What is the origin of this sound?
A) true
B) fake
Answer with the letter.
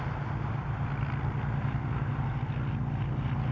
A